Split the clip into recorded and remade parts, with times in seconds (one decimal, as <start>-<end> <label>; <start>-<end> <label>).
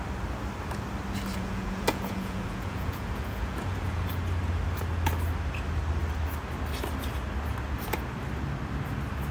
0.0-1.3 recorded; 1.3-4.1 remade; 4.1-9.3 recorded